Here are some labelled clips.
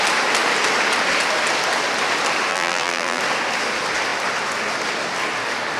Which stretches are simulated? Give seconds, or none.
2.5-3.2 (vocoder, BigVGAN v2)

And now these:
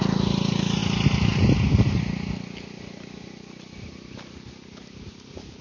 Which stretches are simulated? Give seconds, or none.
none

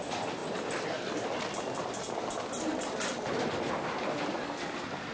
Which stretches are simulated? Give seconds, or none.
none

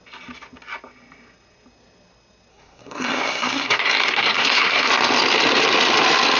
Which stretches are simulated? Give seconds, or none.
2.5-4.9 (codec, SNAC)

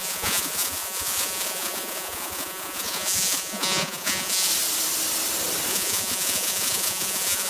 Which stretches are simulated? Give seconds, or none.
0.0-4.5 (vocoder, Vocos); 5.7-7.5

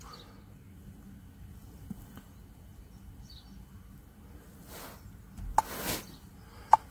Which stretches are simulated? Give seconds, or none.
none

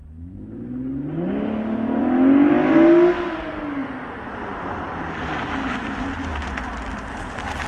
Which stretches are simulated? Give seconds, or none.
3.8-4.3 (vocoder, BigVGAN v2)

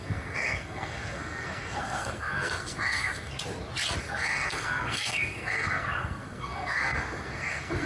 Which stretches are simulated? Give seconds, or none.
0.0-3.3 (codec, SNAC); 4.0-7.9